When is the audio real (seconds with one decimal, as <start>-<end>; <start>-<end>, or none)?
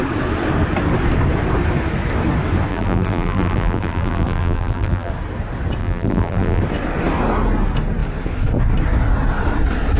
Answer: 0.0-2.7; 5.1-5.8; 6.6-10.0